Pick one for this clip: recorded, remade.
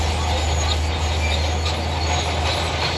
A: recorded